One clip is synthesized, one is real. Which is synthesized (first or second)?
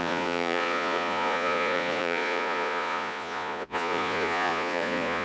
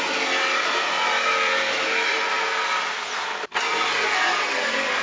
first